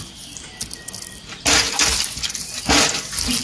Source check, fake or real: real